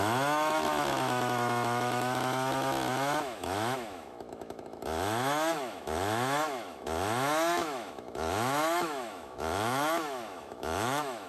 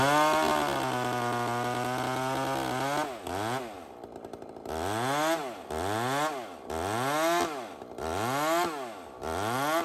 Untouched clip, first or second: second